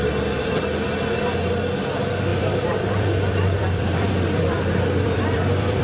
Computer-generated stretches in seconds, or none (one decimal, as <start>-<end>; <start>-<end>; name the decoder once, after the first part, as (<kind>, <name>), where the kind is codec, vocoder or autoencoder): 2.3-5.8 (vocoder, BigVGAN v2)